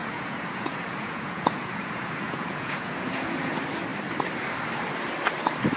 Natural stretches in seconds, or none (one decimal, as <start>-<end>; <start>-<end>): 3.5-5.8